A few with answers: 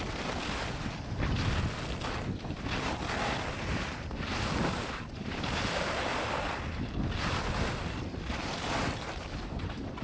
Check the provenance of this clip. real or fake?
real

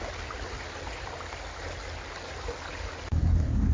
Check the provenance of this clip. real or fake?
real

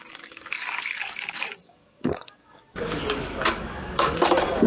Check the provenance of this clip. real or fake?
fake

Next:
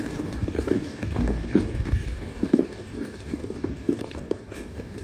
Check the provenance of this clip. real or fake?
fake